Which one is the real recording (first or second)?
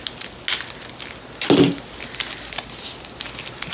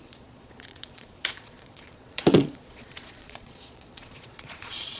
first